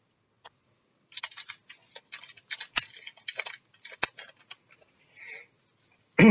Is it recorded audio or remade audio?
recorded